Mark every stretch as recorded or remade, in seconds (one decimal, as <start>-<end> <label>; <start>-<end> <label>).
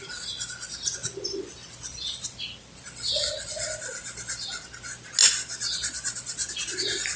0.0-1.0 recorded; 1.0-3.7 remade; 3.7-5.2 recorded; 5.2-6.5 remade; 6.5-7.2 recorded